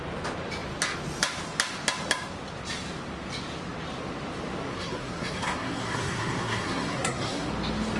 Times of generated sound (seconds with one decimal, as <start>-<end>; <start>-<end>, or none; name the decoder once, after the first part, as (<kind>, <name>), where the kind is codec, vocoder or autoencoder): 4.7-7.5 (codec, SNAC)